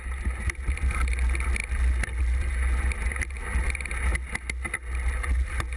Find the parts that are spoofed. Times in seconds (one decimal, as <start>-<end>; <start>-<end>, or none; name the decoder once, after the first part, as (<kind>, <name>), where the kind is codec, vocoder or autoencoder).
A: none